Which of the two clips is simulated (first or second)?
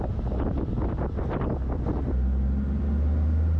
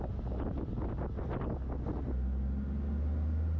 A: first